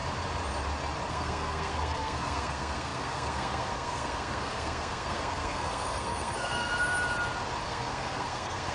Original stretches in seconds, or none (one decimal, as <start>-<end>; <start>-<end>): 0.0-1.1; 6.7-7.6